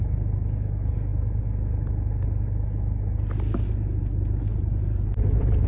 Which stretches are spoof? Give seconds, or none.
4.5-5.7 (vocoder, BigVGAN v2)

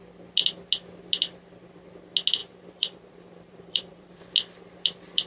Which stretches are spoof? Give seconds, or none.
2.4-4.2 (vocoder, BigVGAN v2)